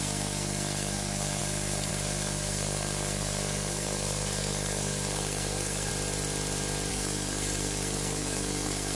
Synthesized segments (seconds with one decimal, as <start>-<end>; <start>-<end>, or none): 0.0-5.9; 6.9-9.0